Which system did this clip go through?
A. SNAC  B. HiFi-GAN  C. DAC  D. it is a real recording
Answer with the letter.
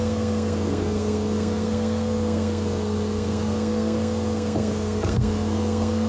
A